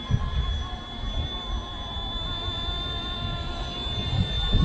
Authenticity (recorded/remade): recorded